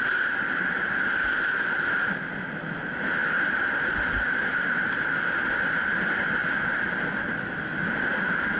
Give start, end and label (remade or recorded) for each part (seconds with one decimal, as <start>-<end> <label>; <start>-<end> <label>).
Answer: 0.0-8.6 recorded